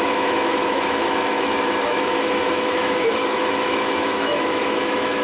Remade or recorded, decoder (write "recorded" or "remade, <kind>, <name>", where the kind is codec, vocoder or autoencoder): remade, autoencoder, DAC-VAE